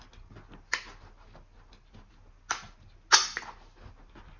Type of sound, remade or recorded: recorded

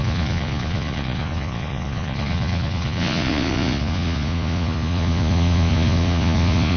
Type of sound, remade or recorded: remade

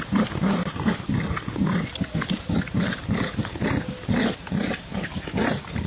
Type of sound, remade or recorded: recorded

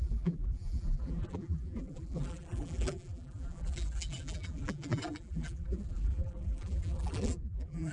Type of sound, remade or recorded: remade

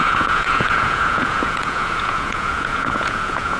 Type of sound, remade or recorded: remade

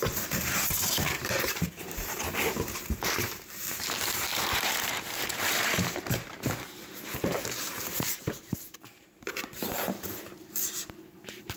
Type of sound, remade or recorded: remade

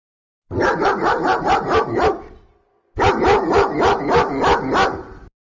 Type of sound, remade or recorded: recorded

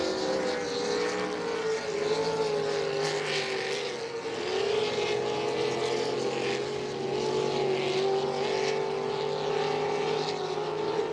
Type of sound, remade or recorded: recorded